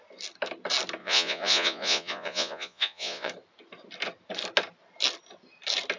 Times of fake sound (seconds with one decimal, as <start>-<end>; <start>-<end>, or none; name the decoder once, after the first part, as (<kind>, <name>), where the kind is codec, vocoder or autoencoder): 1.0-3.3 (vocoder, Vocos)